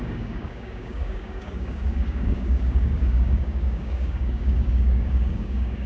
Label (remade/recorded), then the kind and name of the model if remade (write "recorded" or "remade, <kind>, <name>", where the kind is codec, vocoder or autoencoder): remade, codec, DAC